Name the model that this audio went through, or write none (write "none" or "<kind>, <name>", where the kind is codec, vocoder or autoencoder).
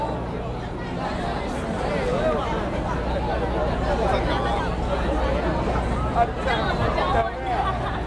none